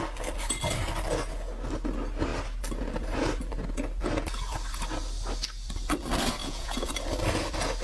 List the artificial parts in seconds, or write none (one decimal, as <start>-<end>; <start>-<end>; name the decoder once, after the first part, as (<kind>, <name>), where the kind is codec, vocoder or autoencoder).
6.4-6.9 (vocoder, Vocos)